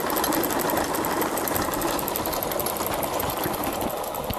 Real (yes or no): yes